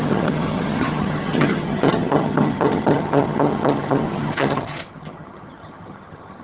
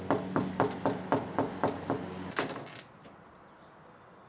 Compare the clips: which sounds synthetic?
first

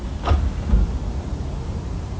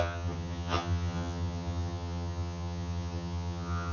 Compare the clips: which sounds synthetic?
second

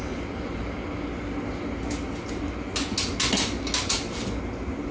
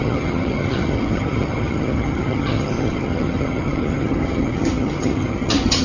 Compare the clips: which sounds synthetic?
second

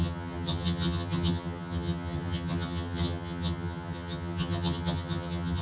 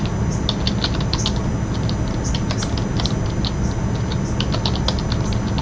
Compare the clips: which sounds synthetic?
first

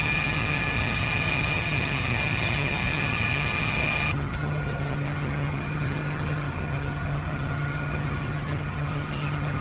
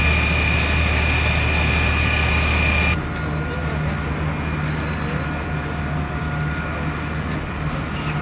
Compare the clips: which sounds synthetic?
first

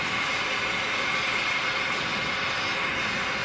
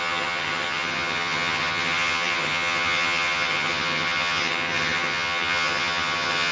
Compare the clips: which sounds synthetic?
second